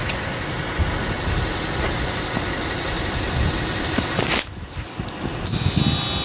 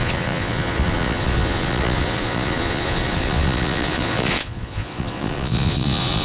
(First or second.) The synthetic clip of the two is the second